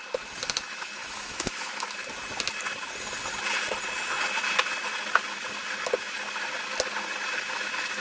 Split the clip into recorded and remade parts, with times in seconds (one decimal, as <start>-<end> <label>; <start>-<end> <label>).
0.0-1.0 recorded; 1.0-1.9 remade; 1.9-8.0 recorded